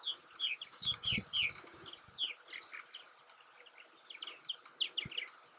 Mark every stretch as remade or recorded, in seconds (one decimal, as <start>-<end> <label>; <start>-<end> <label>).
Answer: 0.0-0.7 recorded; 0.7-1.3 remade; 1.3-5.6 recorded